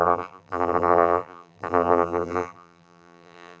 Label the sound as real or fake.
fake